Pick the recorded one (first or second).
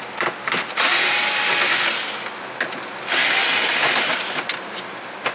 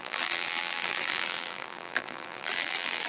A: first